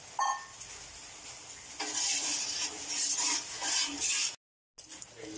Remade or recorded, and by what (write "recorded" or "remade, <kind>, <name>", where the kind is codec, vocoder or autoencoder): recorded